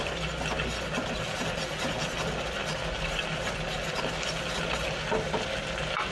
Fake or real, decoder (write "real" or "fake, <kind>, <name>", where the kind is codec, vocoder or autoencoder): real